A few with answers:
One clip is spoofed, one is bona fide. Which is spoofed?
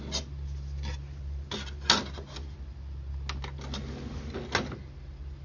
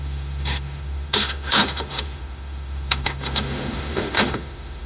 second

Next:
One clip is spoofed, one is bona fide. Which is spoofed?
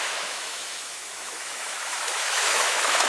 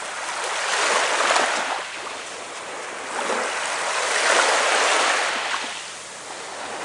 first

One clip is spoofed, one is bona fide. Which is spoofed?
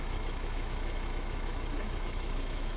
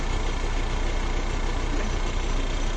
first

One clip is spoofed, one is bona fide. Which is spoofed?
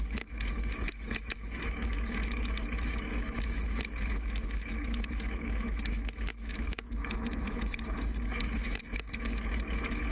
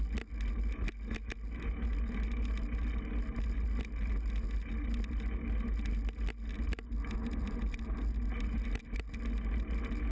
first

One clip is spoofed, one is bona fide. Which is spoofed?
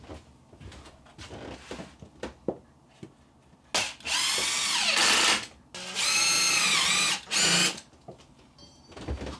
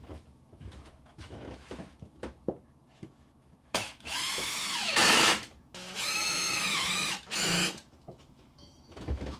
second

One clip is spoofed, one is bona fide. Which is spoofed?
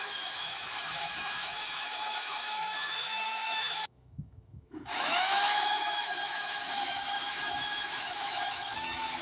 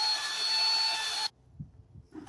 first